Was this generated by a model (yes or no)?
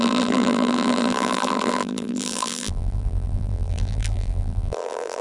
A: yes